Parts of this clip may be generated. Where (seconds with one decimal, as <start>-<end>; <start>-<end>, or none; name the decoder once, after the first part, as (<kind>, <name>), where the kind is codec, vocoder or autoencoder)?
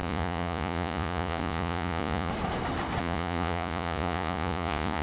0.0-2.3 (vocoder, Vocos); 3.0-5.0